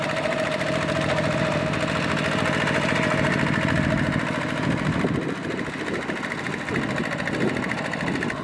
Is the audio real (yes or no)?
yes